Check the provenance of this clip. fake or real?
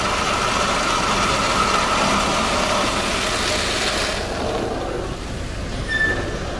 real